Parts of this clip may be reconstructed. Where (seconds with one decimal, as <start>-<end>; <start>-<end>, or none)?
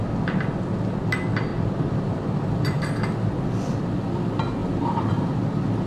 1.5-2.8; 4.6-5.4